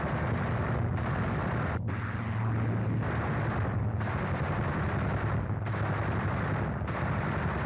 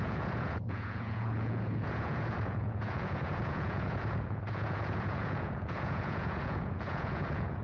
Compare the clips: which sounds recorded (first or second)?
first